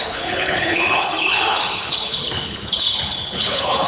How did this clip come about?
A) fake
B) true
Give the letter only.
A